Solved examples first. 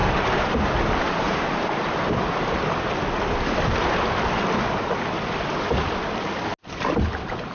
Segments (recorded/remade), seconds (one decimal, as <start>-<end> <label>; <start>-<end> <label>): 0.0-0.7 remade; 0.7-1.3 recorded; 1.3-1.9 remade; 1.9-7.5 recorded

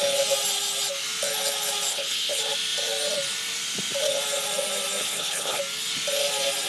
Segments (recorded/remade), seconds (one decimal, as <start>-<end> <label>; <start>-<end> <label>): 0.0-1.9 recorded; 1.9-2.4 remade; 2.4-5.0 recorded; 5.0-5.6 remade; 5.6-6.7 recorded

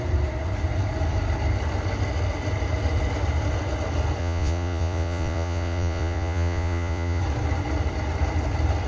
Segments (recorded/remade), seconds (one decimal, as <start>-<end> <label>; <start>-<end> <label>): 0.0-4.2 recorded; 4.2-7.2 remade; 7.2-8.9 recorded